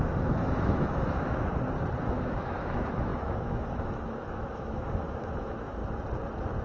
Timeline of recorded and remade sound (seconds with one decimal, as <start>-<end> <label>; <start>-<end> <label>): 0.0-1.5 remade; 1.5-2.0 recorded; 2.0-5.8 remade; 5.8-6.6 recorded